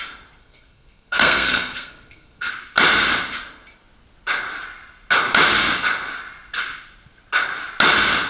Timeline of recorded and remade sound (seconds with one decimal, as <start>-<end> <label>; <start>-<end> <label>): 0.0-0.4 recorded; 0.4-2.5 remade; 2.5-8.3 recorded